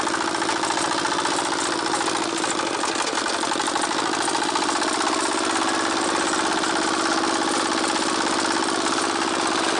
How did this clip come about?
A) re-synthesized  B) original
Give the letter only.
B